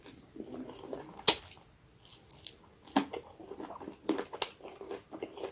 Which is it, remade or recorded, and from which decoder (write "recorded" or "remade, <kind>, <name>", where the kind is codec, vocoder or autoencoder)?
recorded